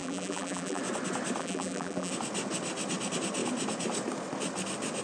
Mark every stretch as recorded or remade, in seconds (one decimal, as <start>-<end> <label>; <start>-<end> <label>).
0.0-0.8 remade; 0.8-1.4 recorded; 1.4-2.1 remade; 2.1-5.0 recorded